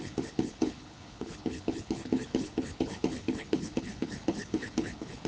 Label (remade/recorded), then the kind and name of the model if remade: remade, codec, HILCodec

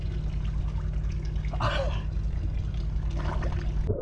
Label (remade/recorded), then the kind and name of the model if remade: recorded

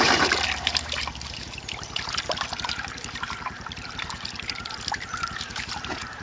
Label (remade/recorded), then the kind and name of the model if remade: remade, vocoder, BigVGAN v2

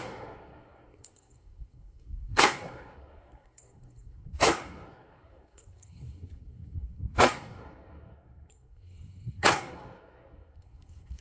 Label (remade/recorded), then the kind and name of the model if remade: remade, codec, SNAC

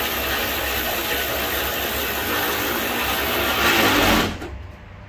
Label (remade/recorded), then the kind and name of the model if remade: recorded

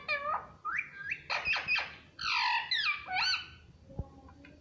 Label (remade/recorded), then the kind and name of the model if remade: recorded